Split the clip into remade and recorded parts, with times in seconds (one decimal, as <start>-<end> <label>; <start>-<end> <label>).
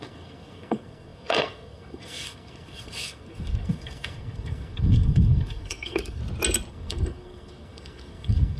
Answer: 0.0-6.2 remade; 6.2-6.7 recorded; 6.7-8.6 remade